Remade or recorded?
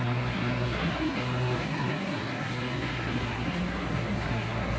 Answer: remade